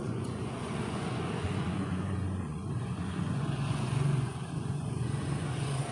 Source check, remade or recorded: remade